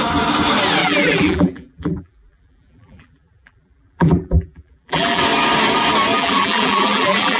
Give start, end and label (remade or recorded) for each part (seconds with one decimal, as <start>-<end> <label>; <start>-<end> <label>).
0.0-0.8 recorded; 0.8-5.2 remade; 5.2-6.1 recorded; 6.1-7.4 remade